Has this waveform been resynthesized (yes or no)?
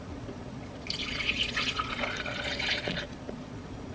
yes